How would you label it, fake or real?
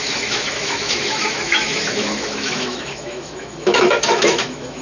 fake